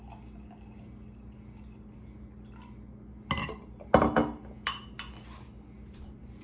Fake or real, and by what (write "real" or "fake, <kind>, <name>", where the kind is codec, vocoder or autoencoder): real